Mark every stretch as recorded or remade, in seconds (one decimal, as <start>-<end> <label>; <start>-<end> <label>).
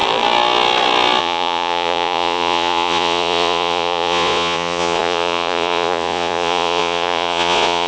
0.0-1.2 recorded; 1.2-7.9 remade